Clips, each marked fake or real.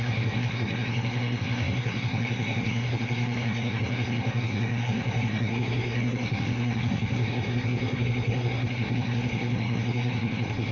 fake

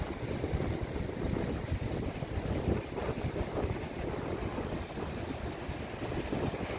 real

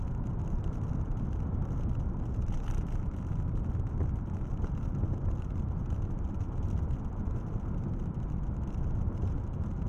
real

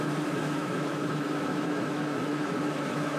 fake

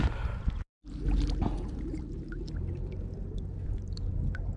real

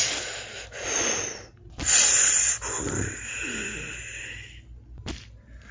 real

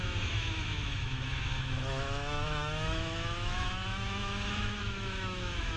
fake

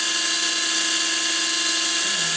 real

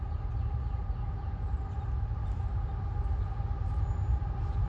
real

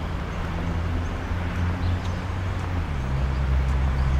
real